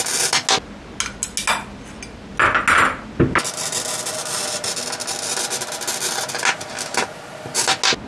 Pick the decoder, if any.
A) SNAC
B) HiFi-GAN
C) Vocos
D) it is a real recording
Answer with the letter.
D